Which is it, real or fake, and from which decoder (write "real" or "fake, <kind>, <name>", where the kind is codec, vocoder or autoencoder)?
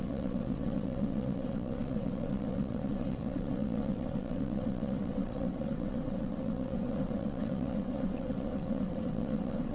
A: fake, vocoder, WaveNeXt